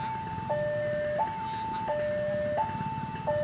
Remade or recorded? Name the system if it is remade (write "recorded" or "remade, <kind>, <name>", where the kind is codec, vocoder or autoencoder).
recorded